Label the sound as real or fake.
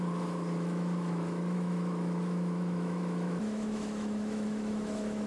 fake